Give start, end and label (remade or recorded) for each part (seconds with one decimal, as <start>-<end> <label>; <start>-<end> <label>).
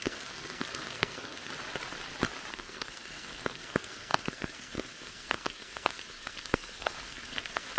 0.0-1.5 remade; 1.5-2.5 recorded; 2.5-7.8 remade